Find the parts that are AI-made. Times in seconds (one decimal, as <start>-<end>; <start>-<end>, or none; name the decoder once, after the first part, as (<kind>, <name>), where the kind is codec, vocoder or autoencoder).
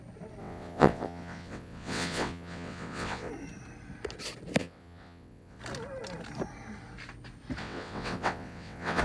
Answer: 0.4-3.3 (vocoder, WaveNeXt); 4.6-5.6; 7.6-9.0